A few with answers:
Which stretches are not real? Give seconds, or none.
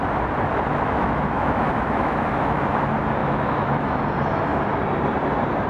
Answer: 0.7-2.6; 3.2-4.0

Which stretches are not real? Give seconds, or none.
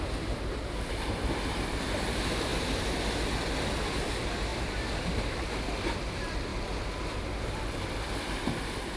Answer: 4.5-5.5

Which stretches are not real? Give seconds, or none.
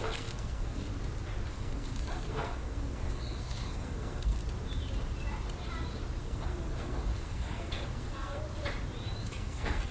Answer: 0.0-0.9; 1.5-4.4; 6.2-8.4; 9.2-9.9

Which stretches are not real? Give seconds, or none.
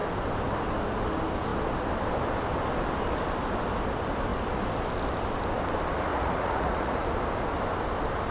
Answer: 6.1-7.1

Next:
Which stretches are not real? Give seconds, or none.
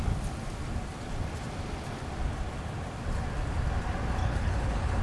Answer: 4.2-5.0